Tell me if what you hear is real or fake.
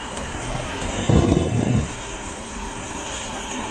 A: fake